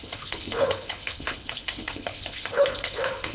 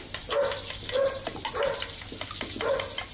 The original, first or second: second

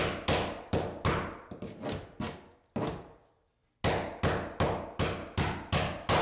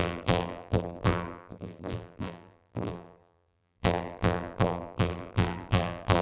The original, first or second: first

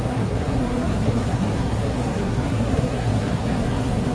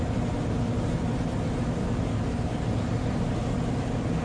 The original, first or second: second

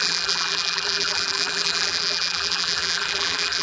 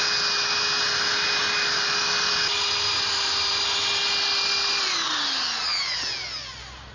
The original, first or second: second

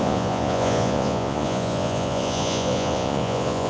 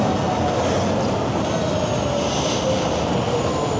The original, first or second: second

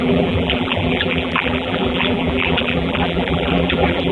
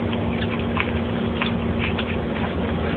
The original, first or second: second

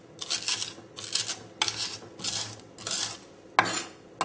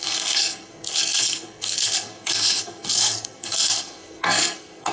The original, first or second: first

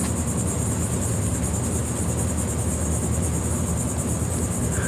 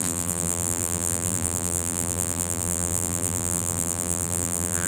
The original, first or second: first